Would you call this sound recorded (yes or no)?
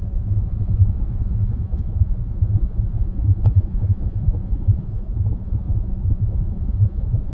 no